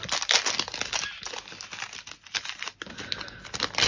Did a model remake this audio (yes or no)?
no